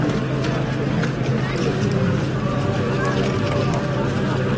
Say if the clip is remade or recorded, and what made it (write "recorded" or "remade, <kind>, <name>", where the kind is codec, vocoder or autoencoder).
recorded